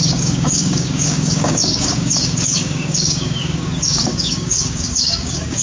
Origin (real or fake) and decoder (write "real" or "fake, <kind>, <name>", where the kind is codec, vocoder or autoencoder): fake, codec, DAC